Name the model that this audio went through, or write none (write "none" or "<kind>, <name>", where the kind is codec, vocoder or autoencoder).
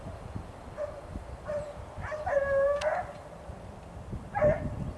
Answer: none